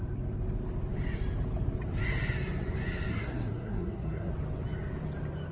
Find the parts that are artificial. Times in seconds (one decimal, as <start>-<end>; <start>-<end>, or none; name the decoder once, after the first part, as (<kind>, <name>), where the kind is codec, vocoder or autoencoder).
3.1-4.3 (codec, SNAC)